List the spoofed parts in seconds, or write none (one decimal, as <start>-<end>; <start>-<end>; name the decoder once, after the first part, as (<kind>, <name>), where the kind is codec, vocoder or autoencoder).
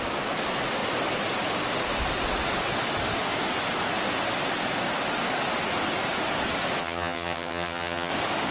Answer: 6.8-8.1 (vocoder, HiFi-GAN)